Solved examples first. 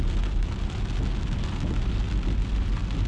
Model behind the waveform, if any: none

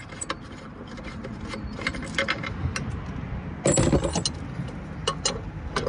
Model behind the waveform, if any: none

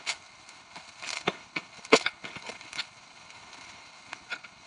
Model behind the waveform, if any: codec, HILCodec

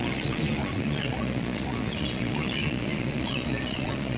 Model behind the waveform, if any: vocoder, Vocos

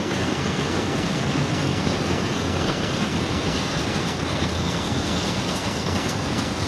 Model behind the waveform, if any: codec, SNAC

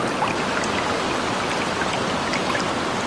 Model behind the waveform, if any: none